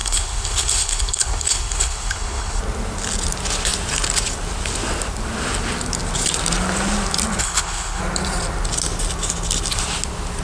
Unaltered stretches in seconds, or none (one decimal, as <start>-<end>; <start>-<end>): 2.6-7.4; 8.0-10.4